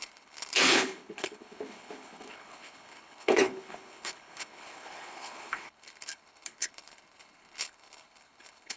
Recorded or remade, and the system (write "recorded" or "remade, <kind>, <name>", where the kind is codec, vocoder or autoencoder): remade, codec, HILCodec